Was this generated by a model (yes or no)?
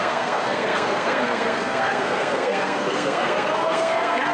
yes